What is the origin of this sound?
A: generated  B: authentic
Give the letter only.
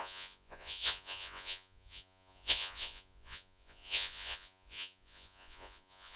A